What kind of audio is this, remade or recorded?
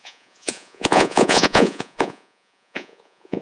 remade